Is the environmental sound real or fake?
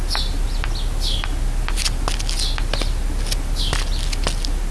real